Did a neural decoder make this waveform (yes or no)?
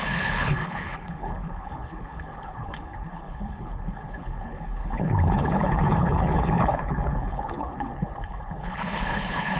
yes